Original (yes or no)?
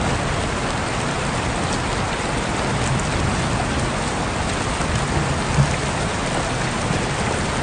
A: yes